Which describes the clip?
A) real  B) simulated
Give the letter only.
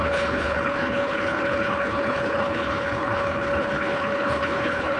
B